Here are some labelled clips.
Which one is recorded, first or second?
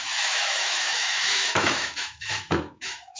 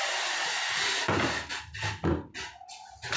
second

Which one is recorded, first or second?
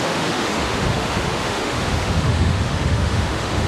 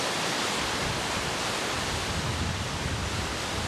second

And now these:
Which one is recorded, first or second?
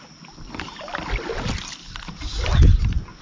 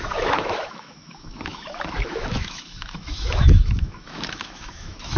first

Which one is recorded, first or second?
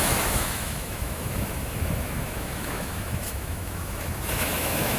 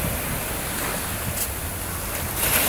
second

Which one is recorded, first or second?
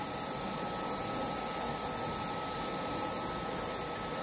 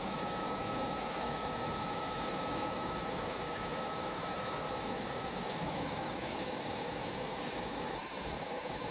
first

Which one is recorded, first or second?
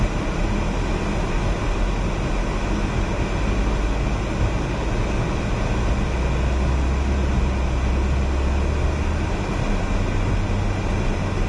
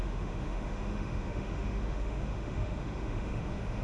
first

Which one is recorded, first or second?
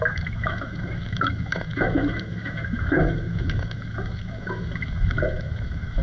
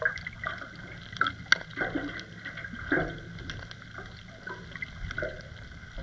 second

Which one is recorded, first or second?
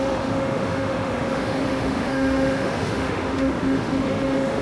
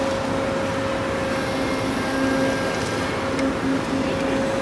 second